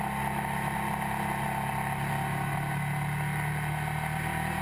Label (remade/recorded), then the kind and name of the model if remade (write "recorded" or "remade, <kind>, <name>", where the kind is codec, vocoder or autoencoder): recorded